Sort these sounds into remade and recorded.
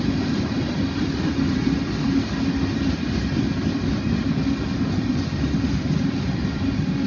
recorded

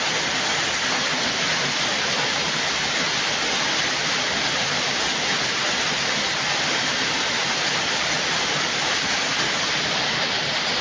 recorded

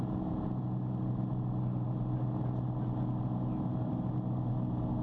recorded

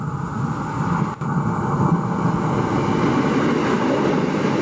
recorded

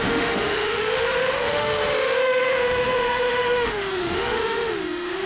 remade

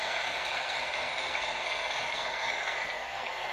remade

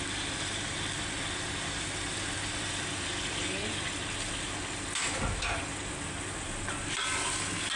recorded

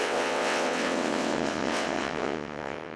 remade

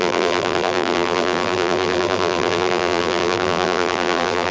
remade